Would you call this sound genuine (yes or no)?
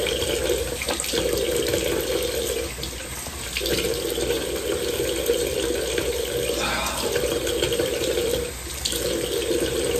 yes